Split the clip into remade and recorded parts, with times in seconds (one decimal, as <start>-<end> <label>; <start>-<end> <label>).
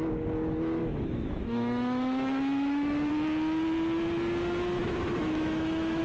0.0-0.8 recorded; 0.8-3.1 remade; 3.1-4.8 recorded; 4.8-6.0 remade